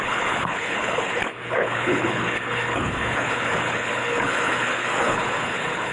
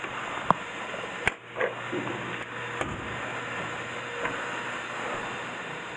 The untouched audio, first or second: second